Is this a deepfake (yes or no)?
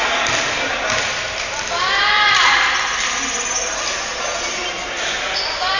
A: no